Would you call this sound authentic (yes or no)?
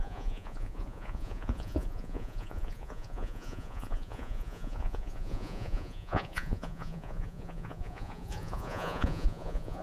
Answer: no